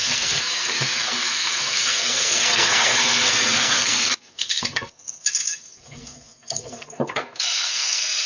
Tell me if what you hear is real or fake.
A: fake